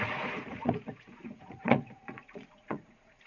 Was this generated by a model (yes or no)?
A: yes